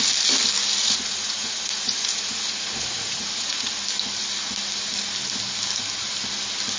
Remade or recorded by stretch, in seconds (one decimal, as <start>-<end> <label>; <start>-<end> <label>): 0.0-0.8 recorded; 0.8-3.7 remade; 3.7-6.8 recorded